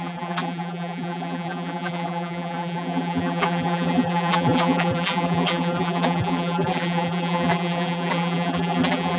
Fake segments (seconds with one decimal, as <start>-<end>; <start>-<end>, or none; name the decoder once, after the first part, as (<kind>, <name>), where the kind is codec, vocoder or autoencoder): 0.0-9.2 (vocoder, BigVGAN v2)